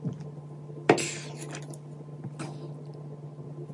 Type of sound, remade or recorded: recorded